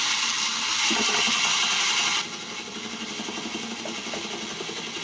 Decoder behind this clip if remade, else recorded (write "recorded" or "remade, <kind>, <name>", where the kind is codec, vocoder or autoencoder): recorded